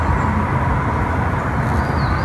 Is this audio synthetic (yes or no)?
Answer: no